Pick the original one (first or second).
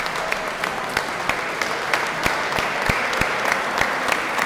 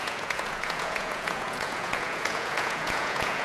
first